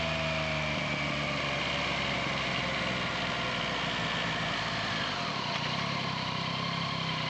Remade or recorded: recorded